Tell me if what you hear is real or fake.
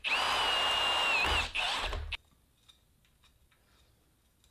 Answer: real